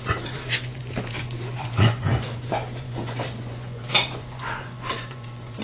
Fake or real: fake